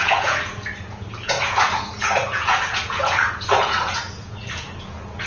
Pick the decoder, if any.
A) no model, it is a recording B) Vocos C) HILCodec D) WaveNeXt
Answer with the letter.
B